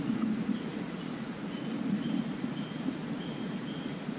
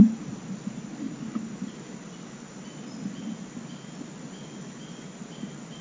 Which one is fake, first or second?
first